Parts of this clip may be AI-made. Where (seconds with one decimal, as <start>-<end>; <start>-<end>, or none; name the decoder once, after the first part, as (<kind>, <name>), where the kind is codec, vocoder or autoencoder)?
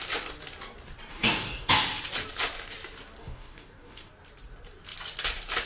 1.1-1.7 (codec, DAC); 3.2-4.1